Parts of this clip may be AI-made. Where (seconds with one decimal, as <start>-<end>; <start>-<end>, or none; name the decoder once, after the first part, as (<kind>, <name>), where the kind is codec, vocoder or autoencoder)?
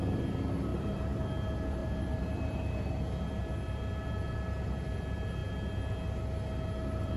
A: 0.7-1.3 (vocoder, BigVGAN v2); 1.8-3.0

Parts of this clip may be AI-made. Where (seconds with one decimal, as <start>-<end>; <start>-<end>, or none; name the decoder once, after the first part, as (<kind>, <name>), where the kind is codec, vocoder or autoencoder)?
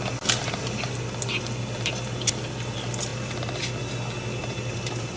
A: 0.4-0.9 (vocoder, BigVGAN v2); 4.4-5.2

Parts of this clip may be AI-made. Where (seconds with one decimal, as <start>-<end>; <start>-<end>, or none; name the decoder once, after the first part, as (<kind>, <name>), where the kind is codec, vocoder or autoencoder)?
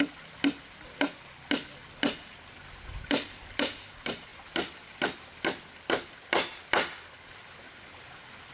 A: 4.3-5.3 (vocoder, BigVGAN v2)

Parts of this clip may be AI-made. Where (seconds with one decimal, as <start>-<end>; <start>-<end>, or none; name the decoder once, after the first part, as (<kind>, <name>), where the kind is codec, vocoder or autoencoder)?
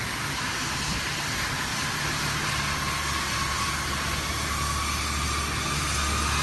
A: none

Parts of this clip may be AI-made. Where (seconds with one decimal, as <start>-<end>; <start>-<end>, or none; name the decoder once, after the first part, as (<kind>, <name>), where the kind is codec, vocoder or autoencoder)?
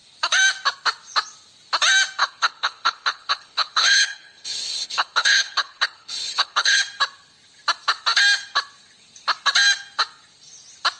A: 2.2-6.8 (codec, HILCodec)